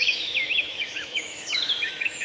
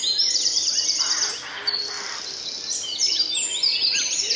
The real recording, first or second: second